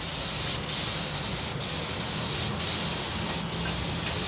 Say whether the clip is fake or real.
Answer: real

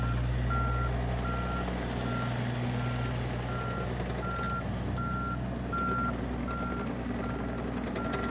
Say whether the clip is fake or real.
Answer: real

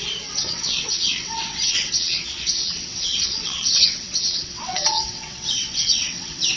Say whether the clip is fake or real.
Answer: fake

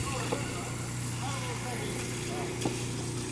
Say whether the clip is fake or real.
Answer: real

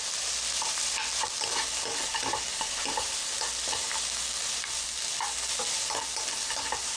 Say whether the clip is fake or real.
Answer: real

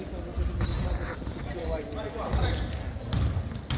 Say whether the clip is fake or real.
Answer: real